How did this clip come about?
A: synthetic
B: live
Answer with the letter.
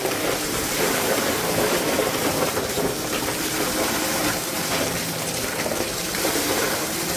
A